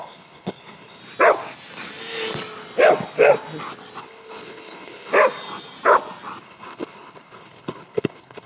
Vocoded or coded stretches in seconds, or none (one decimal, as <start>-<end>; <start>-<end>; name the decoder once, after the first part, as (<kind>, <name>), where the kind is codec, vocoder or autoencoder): 0.0-1.0 (codec, HILCodec); 4.0-5.1; 6.4-8.5